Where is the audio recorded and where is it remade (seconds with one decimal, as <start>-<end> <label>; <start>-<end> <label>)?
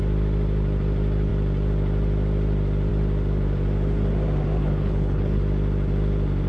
0.0-4.6 recorded; 4.6-5.4 remade; 5.4-6.5 recorded